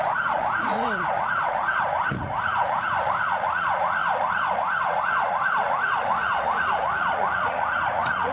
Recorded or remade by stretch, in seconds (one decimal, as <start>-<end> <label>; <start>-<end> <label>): 0.0-8.3 remade